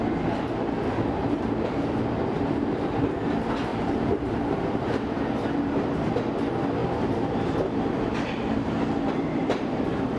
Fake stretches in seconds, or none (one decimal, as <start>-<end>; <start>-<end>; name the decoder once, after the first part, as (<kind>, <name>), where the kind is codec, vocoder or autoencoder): 1.2-3.2 (vocoder, BigVGAN v2); 3.7-6.1; 6.8-10.2